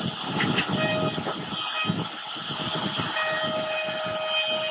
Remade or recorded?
recorded